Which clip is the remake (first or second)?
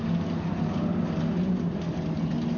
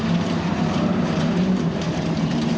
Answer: second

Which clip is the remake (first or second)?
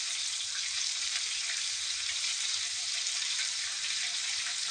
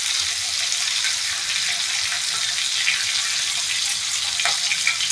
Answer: first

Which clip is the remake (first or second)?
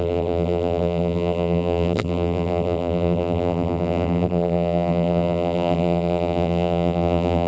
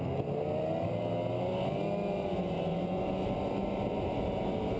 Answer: first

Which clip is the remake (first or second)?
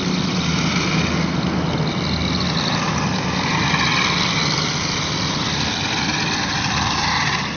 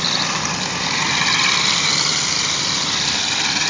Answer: second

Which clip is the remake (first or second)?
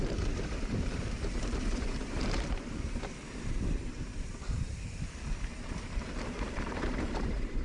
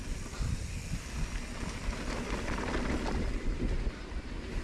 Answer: first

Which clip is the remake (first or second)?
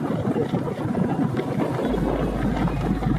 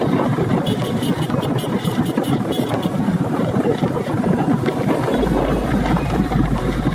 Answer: second